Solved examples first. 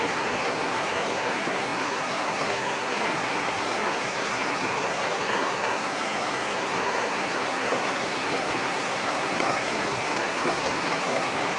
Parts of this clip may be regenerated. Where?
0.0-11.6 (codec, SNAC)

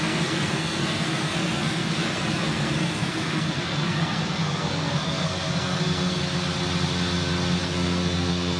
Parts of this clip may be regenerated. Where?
0.0-6.2 (codec, SNAC); 7.6-8.6